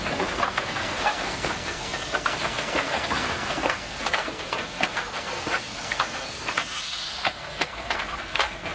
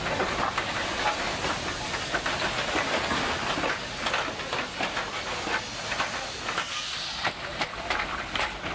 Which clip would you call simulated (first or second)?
first